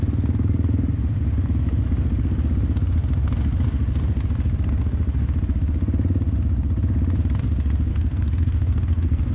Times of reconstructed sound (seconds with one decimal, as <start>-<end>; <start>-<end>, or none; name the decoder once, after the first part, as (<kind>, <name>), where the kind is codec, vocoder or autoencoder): 7.9-9.3 (codec, SNAC)